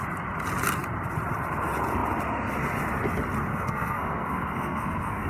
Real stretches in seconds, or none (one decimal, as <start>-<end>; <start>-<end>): 0.0-3.5